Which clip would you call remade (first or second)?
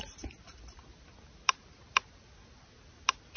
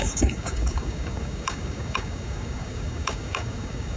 second